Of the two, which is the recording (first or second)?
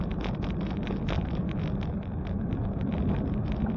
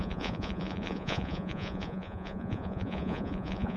first